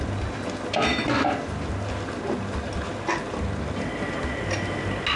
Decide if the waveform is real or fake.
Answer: real